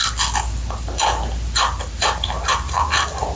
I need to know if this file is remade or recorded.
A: recorded